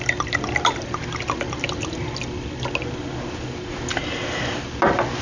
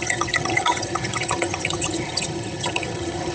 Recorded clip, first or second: first